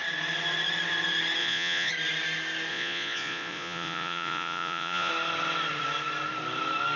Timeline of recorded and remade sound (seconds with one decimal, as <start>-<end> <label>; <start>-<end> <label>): 0.0-1.4 recorded; 1.4-1.9 remade; 1.9-2.7 recorded; 2.7-5.1 remade; 5.1-7.0 recorded